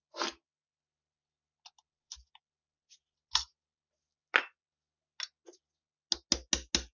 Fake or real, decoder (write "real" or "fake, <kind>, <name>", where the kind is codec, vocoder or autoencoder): real